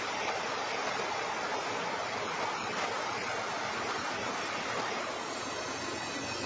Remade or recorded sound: recorded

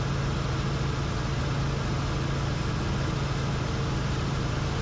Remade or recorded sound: recorded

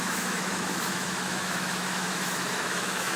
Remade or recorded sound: remade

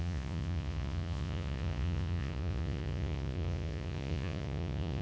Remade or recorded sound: remade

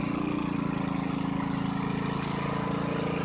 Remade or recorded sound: recorded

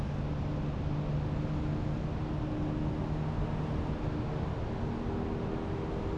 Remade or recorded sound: recorded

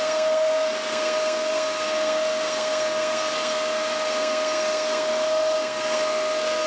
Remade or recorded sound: remade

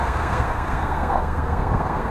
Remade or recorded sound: remade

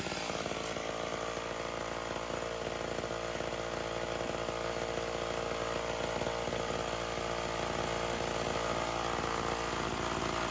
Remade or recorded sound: recorded